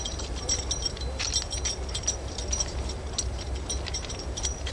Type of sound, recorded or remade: recorded